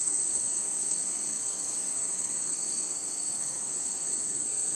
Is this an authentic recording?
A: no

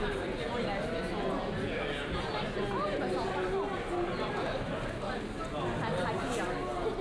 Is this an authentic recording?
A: yes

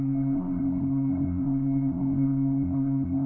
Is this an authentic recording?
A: no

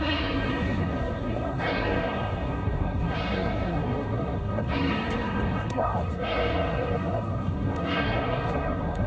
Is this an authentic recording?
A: no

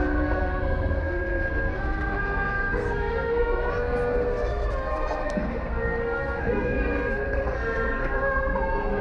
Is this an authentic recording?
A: no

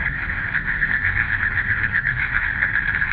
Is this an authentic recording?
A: no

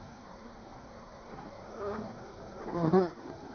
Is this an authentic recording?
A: no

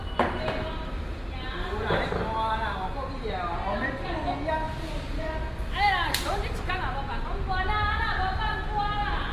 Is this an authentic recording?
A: yes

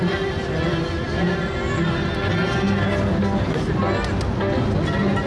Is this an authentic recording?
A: yes